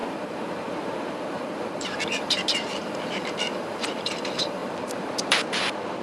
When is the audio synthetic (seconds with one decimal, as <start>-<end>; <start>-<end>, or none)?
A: 0.0-6.0